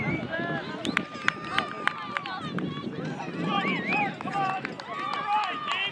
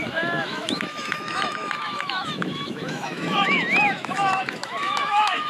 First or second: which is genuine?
first